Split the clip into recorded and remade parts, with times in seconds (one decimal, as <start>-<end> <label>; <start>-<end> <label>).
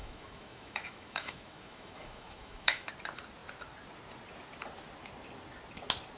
0.0-2.9 remade; 2.9-6.2 recorded